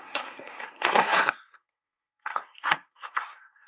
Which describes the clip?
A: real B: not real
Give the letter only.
B